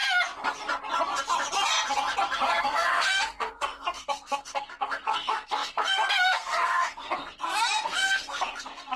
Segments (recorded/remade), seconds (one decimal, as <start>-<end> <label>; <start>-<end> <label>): 0.0-2.6 recorded; 2.6-9.0 remade